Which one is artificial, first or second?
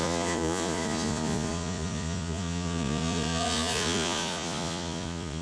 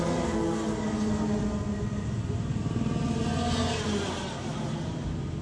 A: first